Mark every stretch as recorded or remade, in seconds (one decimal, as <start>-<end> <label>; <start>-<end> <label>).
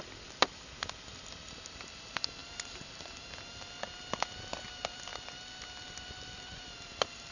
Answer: 0.0-5.1 remade; 5.1-5.8 recorded; 5.8-7.3 remade